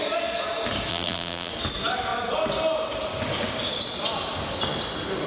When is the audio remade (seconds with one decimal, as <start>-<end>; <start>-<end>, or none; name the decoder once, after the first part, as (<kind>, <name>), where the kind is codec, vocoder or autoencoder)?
0.9-1.5 (vocoder, BigVGAN v2)